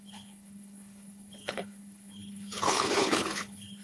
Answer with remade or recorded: remade